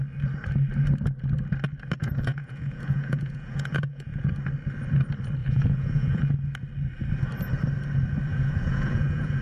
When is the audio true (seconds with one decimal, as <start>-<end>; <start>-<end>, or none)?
0.0-2.0; 4.3-5.4; 6.2-8.3